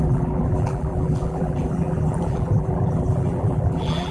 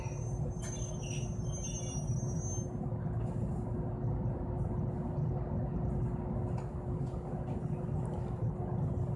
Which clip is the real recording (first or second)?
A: second